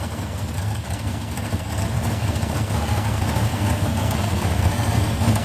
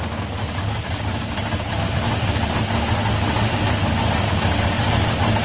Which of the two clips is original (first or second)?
second